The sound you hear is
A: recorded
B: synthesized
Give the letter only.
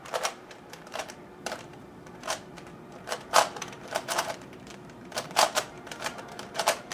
B